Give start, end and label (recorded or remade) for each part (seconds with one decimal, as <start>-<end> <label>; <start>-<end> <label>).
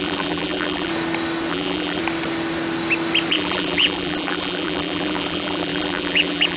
0.0-0.9 remade; 0.9-1.5 recorded; 1.5-2.0 remade; 2.0-3.3 recorded; 3.3-6.6 remade